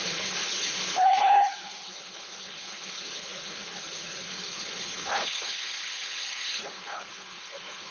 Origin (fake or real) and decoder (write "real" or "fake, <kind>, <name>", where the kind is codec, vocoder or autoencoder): fake, codec, HILCodec